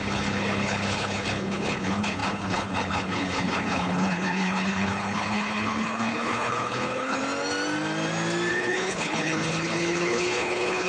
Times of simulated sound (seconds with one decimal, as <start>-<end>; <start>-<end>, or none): 0.0-7.2; 8.5-10.9